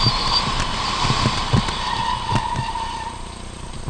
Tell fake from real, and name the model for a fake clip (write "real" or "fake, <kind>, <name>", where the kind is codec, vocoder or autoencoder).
real